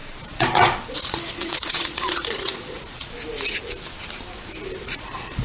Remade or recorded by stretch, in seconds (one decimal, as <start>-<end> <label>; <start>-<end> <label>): 0.0-3.1 remade; 3.1-4.8 recorded; 4.8-5.4 remade